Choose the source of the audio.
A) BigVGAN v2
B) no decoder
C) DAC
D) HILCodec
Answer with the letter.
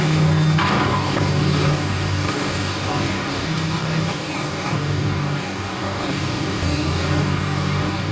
C